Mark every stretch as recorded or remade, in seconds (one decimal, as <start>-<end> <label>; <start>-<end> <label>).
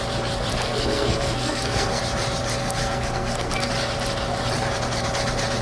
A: 0.0-0.5 recorded; 0.5-2.0 remade; 2.0-2.6 recorded; 2.6-3.7 remade; 3.7-5.6 recorded